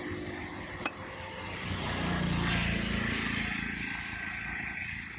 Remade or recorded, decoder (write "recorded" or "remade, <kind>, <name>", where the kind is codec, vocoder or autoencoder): recorded